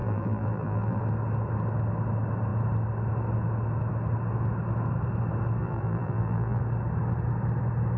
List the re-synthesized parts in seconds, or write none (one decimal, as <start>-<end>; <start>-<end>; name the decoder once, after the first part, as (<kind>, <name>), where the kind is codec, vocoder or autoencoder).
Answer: 0.0-1.0 (vocoder, BigVGAN v2); 5.6-6.6